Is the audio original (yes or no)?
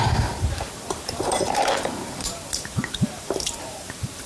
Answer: no